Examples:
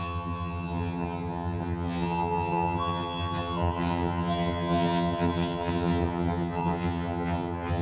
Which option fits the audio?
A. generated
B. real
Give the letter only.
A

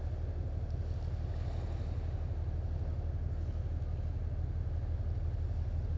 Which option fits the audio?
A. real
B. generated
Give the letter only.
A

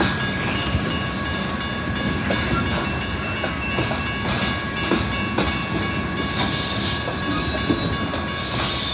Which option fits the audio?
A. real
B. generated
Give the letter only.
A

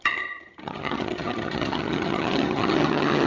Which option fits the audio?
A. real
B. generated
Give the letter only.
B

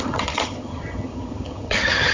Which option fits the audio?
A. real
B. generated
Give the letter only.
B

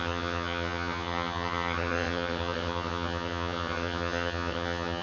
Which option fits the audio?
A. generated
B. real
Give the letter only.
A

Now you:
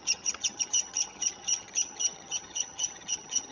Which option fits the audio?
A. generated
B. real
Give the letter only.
A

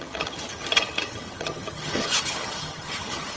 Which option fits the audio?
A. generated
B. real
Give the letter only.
A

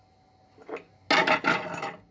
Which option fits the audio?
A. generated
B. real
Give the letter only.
B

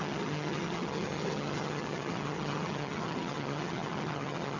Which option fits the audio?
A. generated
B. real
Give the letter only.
A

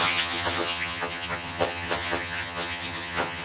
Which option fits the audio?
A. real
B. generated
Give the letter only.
B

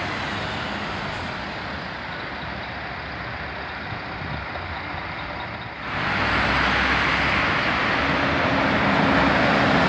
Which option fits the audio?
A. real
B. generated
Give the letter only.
A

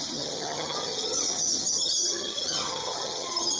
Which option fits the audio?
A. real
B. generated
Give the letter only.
B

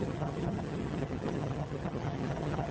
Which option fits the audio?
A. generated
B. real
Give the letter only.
A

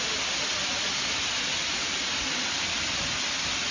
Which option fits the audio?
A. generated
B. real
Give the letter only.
B